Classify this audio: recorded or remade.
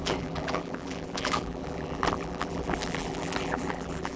remade